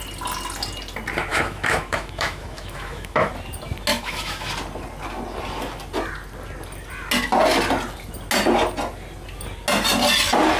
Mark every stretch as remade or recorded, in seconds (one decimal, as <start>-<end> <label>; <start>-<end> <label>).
0.0-1.3 recorded; 1.3-3.3 remade; 3.3-3.9 recorded; 3.9-4.5 remade; 4.5-10.6 recorded